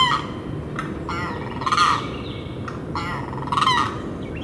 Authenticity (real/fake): real